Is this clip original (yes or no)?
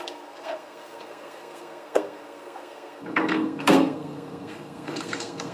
no